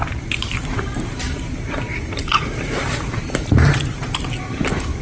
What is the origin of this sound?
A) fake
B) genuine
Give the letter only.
B